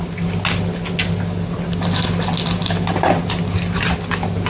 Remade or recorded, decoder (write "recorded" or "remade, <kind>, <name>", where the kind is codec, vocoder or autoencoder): recorded